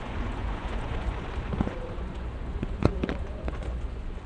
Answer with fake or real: fake